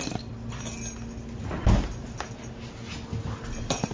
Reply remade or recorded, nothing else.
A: recorded